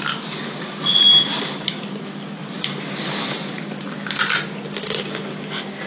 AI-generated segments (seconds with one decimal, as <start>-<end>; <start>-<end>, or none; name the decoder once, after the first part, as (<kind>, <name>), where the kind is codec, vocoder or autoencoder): 2.4-3.8 (vocoder, BigVGAN v2)